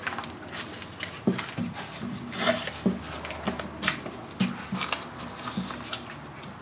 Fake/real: real